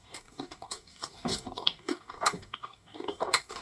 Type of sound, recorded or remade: remade